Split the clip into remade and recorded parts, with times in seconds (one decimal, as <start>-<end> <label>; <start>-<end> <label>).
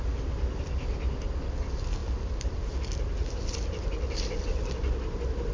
0.0-5.5 recorded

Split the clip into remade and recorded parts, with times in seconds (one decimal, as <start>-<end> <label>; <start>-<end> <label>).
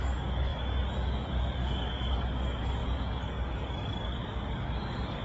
0.0-5.2 remade